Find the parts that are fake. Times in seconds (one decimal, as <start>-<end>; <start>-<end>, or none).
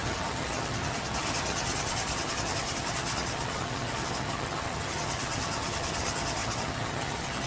0.0-7.5